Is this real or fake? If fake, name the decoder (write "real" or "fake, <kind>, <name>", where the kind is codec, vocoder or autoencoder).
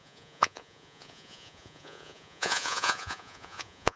fake, vocoder, Vocos